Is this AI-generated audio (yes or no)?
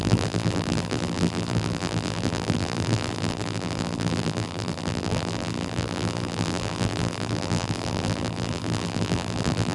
yes